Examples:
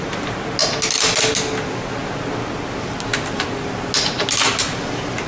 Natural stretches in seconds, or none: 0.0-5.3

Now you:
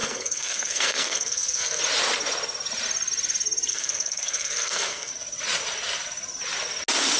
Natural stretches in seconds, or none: 1.8-3.7; 5.1-7.2

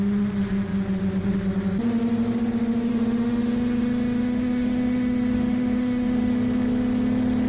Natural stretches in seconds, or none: 0.0-2.9; 6.3-7.5

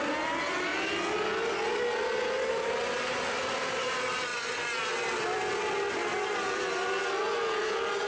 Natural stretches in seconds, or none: 0.0-6.1; 6.7-8.1

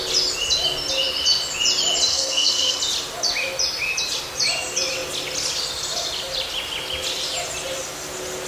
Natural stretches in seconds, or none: 0.0-2.1; 2.8-8.5

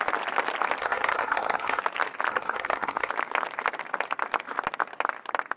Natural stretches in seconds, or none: 0.0-0.8; 1.8-2.3; 3.1-5.6

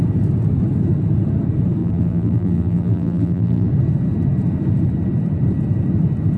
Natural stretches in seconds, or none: 0.0-1.8; 3.7-6.4